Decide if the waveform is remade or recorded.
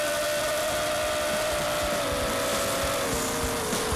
recorded